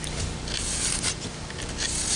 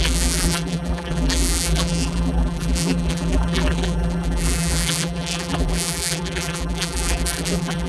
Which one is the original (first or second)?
first